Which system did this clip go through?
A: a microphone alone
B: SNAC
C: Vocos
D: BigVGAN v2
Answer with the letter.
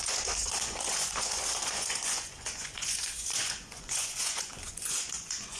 C